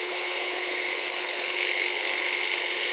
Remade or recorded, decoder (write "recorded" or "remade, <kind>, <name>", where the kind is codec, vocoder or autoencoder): remade, codec, HILCodec